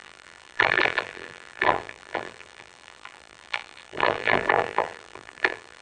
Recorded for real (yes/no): no